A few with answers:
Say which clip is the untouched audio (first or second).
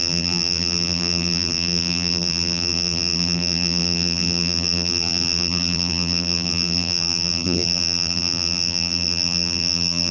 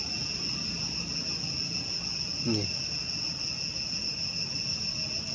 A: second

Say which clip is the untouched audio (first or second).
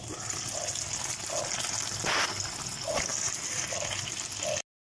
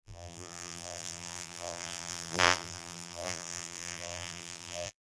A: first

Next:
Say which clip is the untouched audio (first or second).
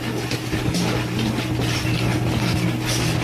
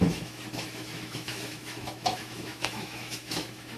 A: first